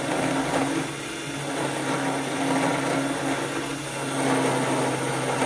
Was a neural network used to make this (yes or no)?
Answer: no